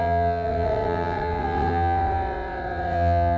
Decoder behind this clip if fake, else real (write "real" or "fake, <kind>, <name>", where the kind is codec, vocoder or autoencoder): fake, vocoder, WaveNeXt